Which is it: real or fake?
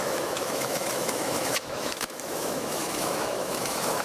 fake